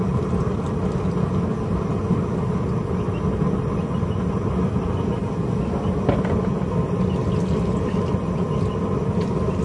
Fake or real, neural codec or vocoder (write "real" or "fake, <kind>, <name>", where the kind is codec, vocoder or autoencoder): real